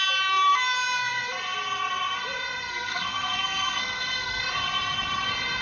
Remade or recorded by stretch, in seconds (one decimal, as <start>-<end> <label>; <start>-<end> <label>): 0.0-2.7 recorded; 2.7-4.4 remade; 4.4-5.6 recorded